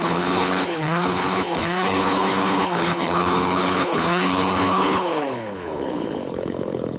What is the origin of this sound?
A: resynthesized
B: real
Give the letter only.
A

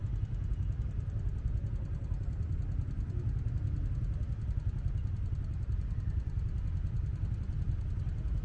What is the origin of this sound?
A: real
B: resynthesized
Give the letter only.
A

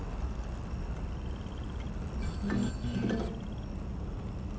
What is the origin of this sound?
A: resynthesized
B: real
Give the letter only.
B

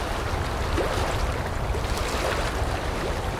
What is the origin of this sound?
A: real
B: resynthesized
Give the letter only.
A